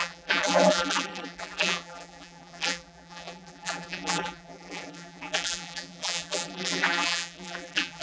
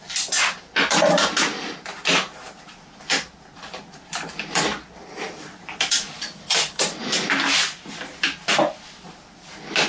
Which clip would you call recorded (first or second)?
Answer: second